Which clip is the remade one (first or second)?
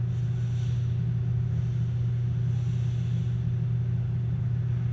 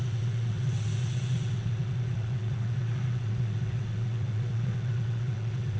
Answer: second